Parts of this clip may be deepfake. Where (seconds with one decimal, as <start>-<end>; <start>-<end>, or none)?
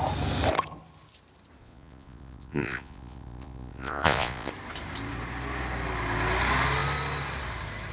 1.6-4.5